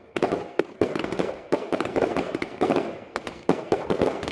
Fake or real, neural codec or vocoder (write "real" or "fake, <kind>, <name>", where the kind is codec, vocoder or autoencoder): fake, codec, SNAC